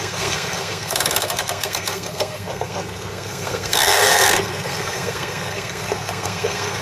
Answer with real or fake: fake